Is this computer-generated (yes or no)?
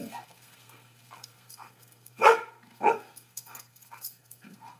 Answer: yes